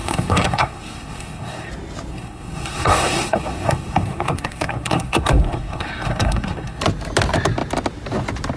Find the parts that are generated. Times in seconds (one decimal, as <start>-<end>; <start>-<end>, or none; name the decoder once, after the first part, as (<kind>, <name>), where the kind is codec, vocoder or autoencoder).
0.0-1.7 (codec, SNAC); 2.1-6.8